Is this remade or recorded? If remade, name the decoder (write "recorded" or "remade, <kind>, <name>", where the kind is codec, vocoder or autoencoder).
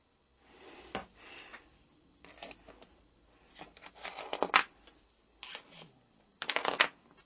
recorded